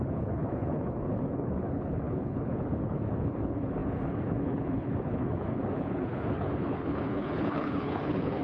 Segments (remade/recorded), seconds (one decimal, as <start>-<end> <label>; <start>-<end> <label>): 0.0-8.4 remade